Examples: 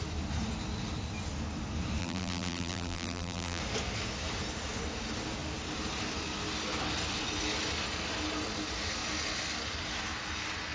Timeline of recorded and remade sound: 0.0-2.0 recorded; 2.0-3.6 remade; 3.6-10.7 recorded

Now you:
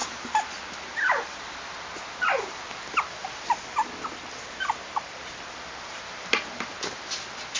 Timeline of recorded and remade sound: 0.0-1.3 remade; 1.3-7.6 recorded